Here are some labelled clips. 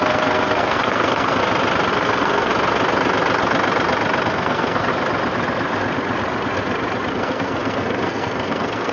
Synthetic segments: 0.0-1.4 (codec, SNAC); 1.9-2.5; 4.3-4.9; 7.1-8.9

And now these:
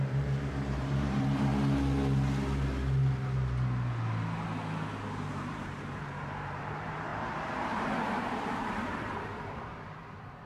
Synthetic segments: 0.0-1.5 (vocoder, BigVGAN v2); 5.3-10.5

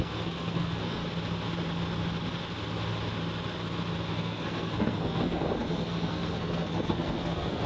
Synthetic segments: 0.0-1.0 (codec, SNAC); 4.1-7.7

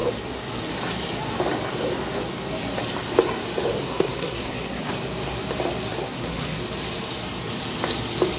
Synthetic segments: 3.8-4.9 (codec, SNAC); 6.0-6.6